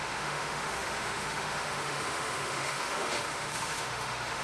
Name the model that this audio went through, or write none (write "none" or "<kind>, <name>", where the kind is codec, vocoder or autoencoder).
autoencoder, DAC-VAE